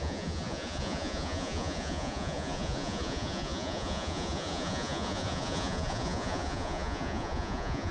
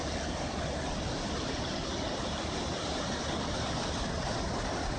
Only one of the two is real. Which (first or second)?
second